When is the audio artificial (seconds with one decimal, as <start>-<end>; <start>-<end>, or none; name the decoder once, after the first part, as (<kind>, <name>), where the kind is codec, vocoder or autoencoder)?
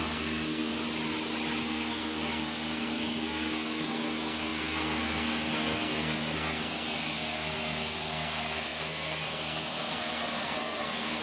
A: 0.0-0.7 (codec, SNAC); 1.6-11.2